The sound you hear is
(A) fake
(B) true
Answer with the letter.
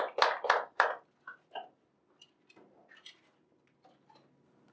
B